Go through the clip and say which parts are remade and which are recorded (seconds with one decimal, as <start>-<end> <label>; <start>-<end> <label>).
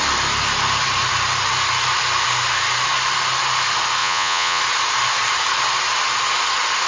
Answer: 0.0-4.0 recorded; 4.0-4.6 remade; 4.6-6.9 recorded